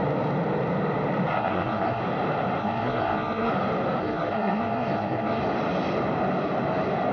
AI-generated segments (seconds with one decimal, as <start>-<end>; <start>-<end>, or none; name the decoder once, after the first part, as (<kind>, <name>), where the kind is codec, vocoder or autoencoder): 1.3-2.0 (codec, SNAC); 2.6-3.5; 4.0-5.4